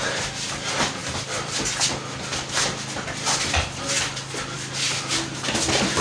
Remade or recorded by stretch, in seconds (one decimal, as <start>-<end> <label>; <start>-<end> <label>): 0.0-6.0 recorded